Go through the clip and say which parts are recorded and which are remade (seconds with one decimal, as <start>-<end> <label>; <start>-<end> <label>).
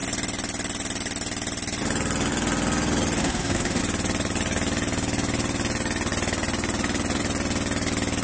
0.0-3.2 recorded; 3.2-3.8 remade; 3.8-8.2 recorded